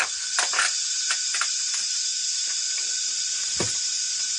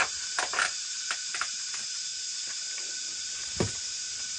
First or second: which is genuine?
first